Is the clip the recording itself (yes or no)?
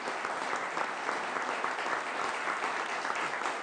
no